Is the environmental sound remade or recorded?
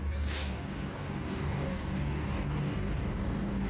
remade